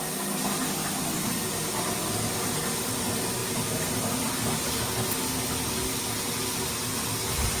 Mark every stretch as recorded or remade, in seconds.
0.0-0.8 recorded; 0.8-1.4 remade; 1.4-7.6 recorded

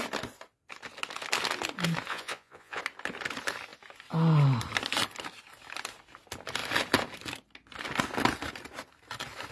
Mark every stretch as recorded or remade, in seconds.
0.0-2.1 recorded; 2.1-2.8 remade; 2.8-9.5 recorded